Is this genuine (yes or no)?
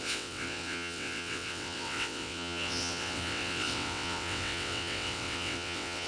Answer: no